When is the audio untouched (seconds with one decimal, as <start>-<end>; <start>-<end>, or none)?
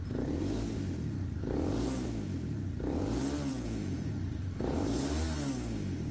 0.0-3.5; 4.1-6.1